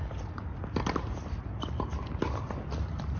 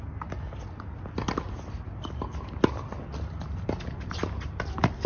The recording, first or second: second